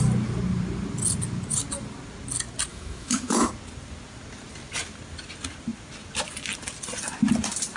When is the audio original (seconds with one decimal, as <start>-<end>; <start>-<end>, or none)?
0.0-2.7; 3.5-7.8